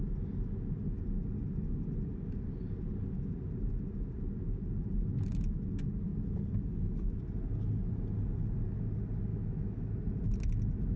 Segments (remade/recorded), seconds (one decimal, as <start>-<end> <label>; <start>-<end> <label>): 0.0-9.3 recorded; 9.3-9.9 remade; 9.9-11.0 recorded